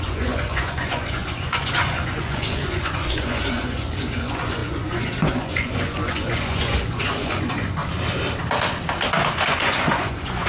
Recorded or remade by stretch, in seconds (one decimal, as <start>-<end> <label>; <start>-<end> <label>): 0.0-7.8 remade; 7.8-9.5 recorded; 9.5-10.5 remade